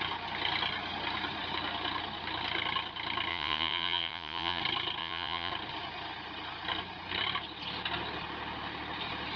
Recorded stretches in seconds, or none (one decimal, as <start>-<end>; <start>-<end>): 0.0-3.3; 4.6-5.0; 5.5-9.4